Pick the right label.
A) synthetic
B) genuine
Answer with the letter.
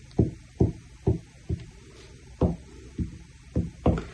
B